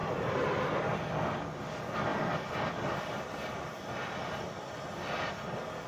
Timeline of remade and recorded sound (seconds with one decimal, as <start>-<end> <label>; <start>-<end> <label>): 0.0-1.4 remade; 1.4-2.1 recorded; 2.1-4.7 remade; 4.7-5.9 recorded

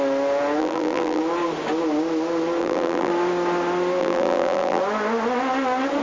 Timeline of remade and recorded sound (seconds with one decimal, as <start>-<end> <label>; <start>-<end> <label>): 0.0-0.6 recorded; 0.6-1.2 remade; 1.2-2.6 recorded; 2.6-3.1 remade; 3.1-4.0 recorded; 4.0-4.8 remade; 4.8-6.0 recorded

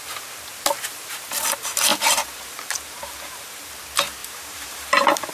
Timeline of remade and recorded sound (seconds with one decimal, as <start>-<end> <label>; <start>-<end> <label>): 0.0-1.9 recorded; 1.9-3.7 remade; 3.7-4.2 recorded; 4.2-5.3 remade

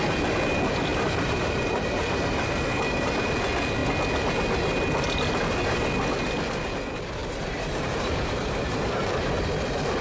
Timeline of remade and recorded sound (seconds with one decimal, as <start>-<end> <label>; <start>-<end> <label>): 0.0-0.9 recorded; 0.9-3.1 remade; 3.1-7.2 recorded; 7.2-9.4 remade; 9.4-10.0 recorded